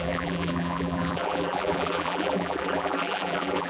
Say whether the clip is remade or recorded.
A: remade